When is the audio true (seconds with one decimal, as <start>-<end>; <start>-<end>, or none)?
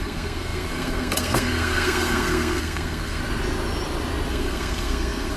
3.2-4.3